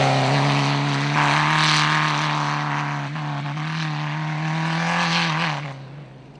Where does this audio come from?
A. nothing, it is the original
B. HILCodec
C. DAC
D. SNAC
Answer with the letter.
A